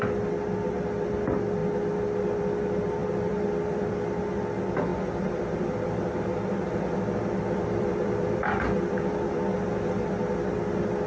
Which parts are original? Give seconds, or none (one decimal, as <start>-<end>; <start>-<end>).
0.0-3.0; 3.9-4.9; 9.0-11.1